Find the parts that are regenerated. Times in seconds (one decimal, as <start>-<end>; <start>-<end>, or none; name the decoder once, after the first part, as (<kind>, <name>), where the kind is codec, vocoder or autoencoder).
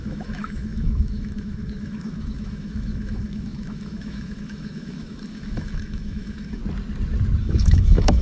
0.0-6.6 (autoencoder, DAC-VAE); 7.4-8.2